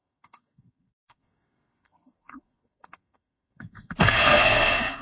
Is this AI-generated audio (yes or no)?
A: yes